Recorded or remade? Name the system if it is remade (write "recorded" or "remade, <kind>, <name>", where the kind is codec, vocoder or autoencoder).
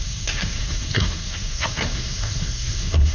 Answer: remade, codec, SNAC